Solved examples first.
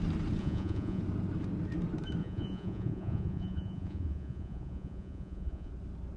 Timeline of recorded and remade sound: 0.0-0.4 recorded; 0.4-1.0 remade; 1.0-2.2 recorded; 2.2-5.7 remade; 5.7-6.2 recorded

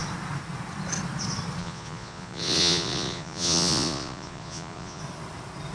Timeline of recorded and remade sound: 0.0-1.6 recorded; 1.6-5.0 remade; 5.0-5.7 recorded

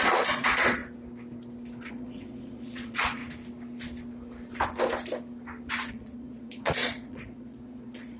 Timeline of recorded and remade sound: 0.0-0.8 remade; 0.8-1.9 recorded; 1.9-3.2 remade; 3.2-5.9 recorded; 5.9-8.2 remade